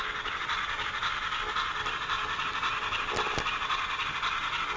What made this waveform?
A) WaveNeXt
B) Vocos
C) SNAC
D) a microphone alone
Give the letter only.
D